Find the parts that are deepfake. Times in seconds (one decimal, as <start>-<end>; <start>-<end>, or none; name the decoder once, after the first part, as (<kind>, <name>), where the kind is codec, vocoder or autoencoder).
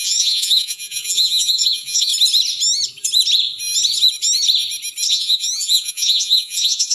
0.0-2.1 (vocoder, Vocos); 5.1-6.9